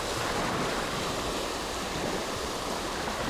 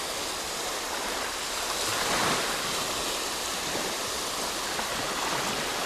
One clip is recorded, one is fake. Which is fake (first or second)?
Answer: first